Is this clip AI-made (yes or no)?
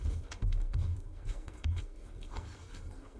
yes